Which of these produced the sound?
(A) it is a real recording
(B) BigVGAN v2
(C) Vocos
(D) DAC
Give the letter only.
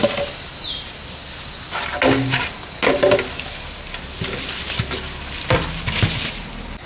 A